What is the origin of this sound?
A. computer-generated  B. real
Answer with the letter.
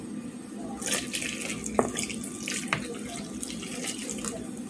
B